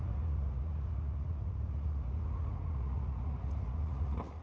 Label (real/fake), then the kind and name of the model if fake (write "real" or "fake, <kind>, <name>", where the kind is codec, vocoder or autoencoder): fake, vocoder, Vocos